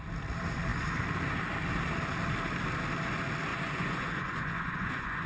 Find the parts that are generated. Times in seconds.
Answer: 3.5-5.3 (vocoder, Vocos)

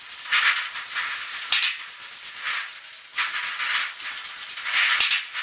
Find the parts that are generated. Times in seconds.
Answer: none

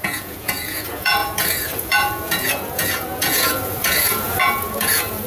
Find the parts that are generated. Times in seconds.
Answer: 0.0-5.3 (vocoder, Vocos)